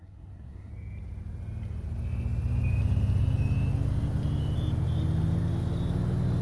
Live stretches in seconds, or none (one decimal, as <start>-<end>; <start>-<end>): 0.7-6.4

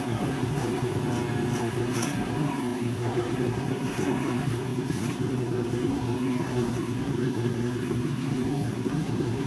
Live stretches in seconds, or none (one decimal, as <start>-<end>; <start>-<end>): 1.0-1.6

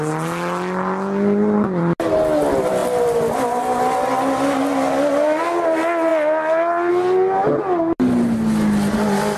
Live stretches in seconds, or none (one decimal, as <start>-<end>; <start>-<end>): 0.0-9.4

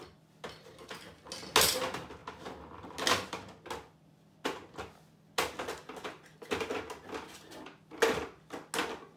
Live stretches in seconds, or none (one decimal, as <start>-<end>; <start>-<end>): 0.0-9.2

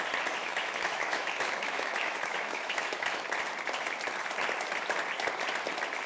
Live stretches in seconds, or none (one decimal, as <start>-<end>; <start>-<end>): 0.0-0.4; 3.2-6.1